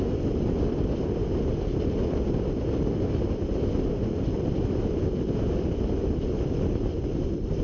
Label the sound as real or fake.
real